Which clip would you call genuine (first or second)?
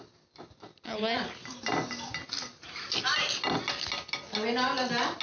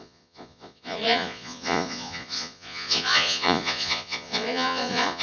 first